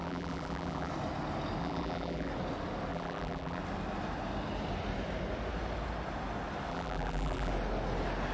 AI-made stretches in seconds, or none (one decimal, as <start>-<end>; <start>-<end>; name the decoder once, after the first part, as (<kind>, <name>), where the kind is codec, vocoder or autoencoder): 0.0-0.9 (vocoder, BigVGAN v2); 1.6-2.3; 2.9-3.6; 6.7-7.5